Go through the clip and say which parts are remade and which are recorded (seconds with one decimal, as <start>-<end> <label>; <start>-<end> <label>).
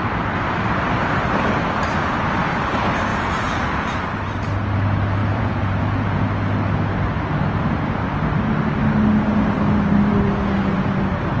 0.0-3.1 recorded; 3.1-3.9 remade; 3.9-5.2 recorded; 5.2-6.2 remade; 6.2-11.4 recorded